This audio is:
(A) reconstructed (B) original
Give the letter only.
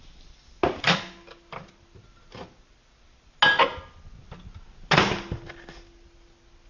B